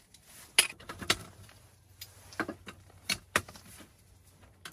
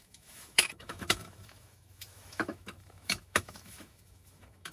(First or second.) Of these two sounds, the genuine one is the first